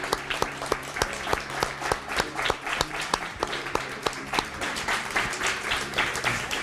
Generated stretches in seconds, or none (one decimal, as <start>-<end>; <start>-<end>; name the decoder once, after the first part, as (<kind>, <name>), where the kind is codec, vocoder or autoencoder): 0.0-1.3 (vocoder, BigVGAN v2); 2.0-6.6